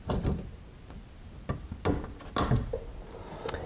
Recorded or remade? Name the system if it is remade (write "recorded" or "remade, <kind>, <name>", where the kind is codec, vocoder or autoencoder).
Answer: recorded